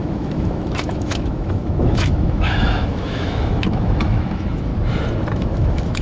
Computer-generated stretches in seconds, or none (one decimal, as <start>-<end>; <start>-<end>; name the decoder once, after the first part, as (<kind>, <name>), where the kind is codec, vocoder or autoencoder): 0.0-4.7 (autoencoder, DAC-VAE); 5.3-6.0